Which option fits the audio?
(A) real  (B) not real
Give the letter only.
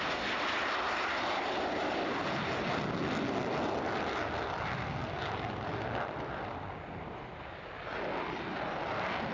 A